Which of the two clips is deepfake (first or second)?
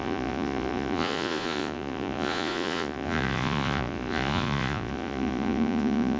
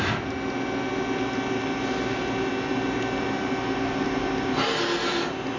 first